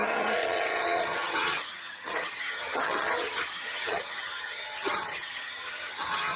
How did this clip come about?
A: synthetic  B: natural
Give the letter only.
A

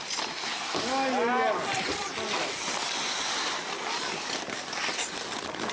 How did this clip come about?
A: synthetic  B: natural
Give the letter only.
B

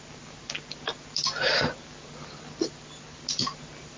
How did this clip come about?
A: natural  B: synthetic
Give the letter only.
A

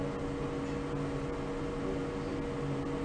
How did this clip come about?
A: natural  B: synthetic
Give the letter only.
A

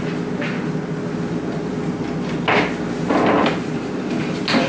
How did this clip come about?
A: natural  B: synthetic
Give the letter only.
A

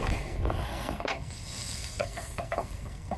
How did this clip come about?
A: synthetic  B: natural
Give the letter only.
A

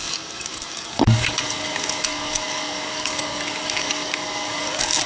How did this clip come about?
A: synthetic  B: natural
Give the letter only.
A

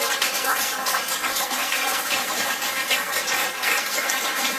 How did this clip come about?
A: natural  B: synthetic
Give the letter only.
B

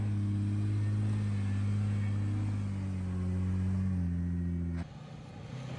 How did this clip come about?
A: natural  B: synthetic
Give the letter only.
A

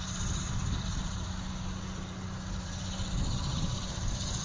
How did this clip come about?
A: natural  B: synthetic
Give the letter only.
A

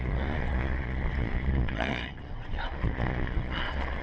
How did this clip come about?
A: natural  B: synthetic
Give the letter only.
B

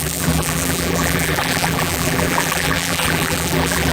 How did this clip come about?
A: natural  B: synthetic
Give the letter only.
B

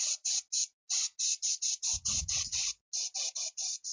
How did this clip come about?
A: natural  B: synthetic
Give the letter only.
A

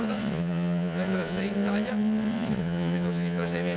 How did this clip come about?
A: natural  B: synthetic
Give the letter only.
B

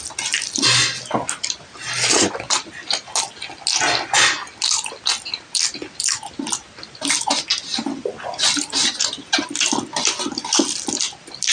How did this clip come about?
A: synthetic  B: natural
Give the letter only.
B